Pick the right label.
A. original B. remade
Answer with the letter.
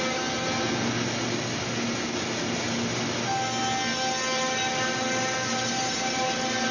A